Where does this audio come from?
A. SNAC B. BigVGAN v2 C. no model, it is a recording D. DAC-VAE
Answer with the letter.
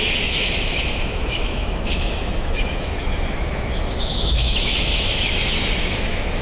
D